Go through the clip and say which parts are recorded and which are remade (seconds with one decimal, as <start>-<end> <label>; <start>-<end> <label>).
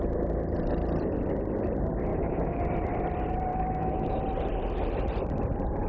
0.0-2.1 recorded; 2.1-2.6 remade; 2.6-3.5 recorded; 3.5-4.2 remade; 4.2-5.9 recorded